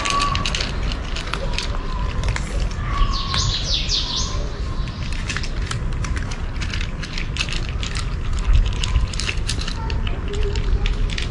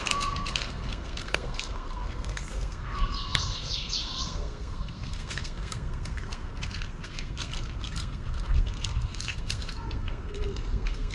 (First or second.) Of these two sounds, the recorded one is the first